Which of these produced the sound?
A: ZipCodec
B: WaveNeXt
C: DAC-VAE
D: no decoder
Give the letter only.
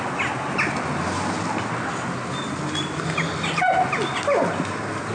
D